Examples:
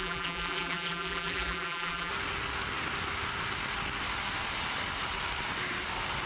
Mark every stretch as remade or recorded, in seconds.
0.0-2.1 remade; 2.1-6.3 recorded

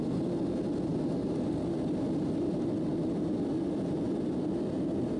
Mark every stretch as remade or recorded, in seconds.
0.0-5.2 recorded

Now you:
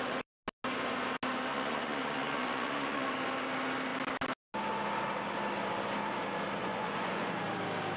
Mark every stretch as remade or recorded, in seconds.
0.0-1.5 recorded; 1.5-3.1 remade; 3.1-6.6 recorded; 6.6-7.4 remade; 7.4-8.0 recorded

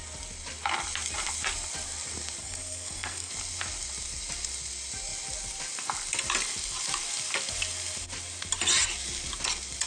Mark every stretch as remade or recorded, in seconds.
0.0-2.4 recorded; 2.4-3.3 remade; 3.3-9.9 recorded

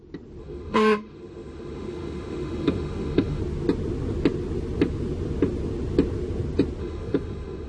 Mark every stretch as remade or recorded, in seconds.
0.0-0.4 recorded; 0.4-3.4 remade; 3.4-6.8 recorded; 6.8-7.7 remade

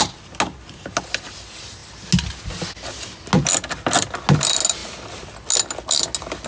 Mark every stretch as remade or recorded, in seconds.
0.0-6.5 recorded

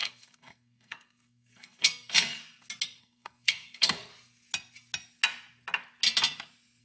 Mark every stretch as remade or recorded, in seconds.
0.0-2.4 remade; 2.4-3.0 recorded; 3.0-4.1 remade; 4.1-6.8 recorded